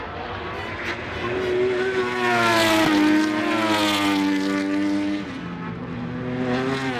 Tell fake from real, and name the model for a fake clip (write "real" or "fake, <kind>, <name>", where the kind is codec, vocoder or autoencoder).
real